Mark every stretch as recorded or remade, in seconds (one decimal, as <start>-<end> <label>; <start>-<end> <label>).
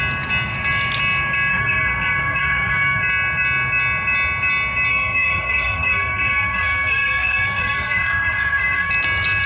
0.0-1.5 recorded; 1.5-3.0 remade; 3.0-4.9 recorded; 4.9-8.9 remade; 8.9-9.5 recorded